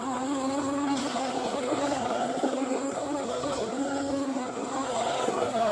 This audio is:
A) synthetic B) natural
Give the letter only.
A